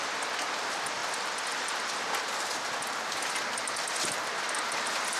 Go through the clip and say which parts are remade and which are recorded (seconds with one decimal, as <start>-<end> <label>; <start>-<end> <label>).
0.0-5.2 recorded